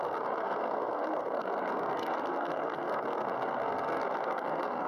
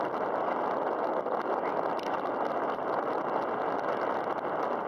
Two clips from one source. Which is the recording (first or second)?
second